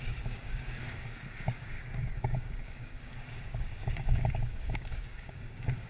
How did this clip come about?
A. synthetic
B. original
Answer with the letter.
A